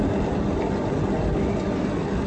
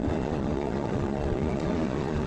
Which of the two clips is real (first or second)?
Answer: first